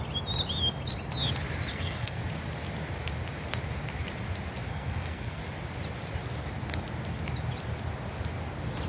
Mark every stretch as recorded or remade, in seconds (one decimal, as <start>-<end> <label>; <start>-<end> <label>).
0.0-1.7 recorded; 1.7-2.2 remade; 2.2-4.7 recorded; 4.7-5.4 remade; 5.4-8.9 recorded